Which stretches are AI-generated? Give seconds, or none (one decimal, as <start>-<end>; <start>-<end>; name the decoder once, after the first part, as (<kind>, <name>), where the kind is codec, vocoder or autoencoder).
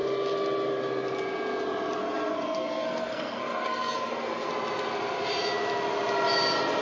2.0-4.5 (codec, SNAC)